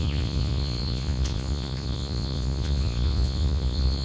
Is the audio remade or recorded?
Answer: remade